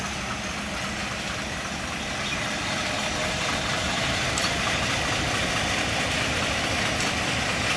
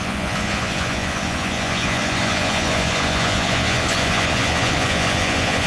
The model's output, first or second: second